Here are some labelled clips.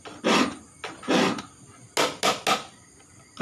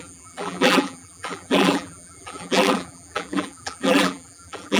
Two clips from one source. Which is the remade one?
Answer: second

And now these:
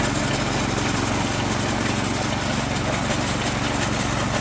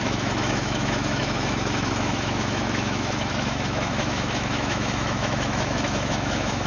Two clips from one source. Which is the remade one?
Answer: second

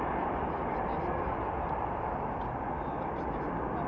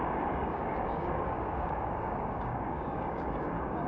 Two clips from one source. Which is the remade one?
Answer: second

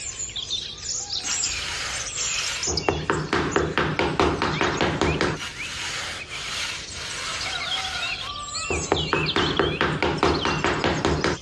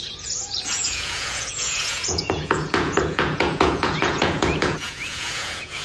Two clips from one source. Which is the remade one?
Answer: second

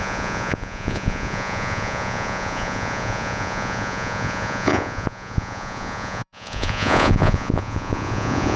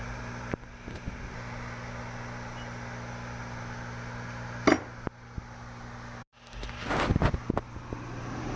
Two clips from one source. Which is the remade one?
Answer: first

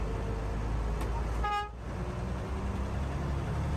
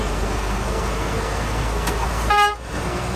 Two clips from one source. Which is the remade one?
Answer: second